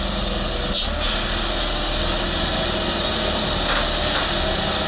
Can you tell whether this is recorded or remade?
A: recorded